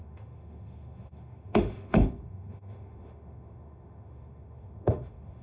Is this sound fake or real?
fake